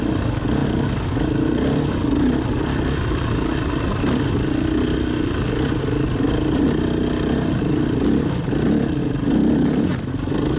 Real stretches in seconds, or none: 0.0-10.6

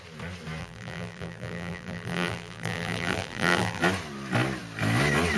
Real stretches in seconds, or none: 0.0-0.6; 3.8-5.4